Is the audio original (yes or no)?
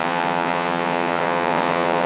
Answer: no